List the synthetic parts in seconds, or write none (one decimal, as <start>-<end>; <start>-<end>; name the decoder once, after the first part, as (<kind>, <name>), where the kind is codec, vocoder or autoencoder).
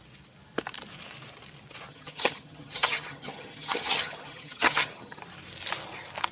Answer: 1.9-5.2 (vocoder, HiFi-GAN)